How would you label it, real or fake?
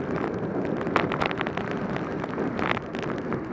real